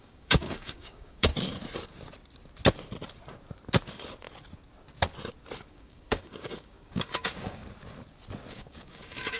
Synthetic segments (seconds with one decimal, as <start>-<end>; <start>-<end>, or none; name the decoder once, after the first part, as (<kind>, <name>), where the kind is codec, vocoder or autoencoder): 0.0-1.3 (codec, DAC); 5.7-7.6; 8.5-9.4